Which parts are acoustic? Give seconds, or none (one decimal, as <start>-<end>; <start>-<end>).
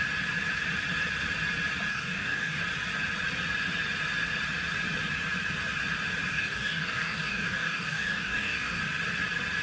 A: 0.0-1.9; 2.6-6.3; 8.8-9.6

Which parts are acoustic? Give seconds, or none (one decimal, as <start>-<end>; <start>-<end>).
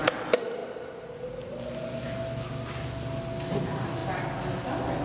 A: 0.0-5.0